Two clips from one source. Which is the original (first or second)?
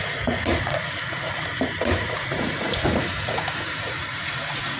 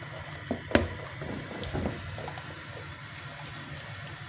second